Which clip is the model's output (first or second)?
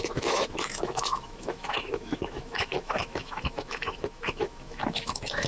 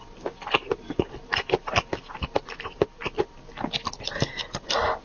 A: first